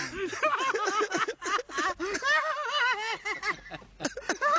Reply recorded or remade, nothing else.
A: recorded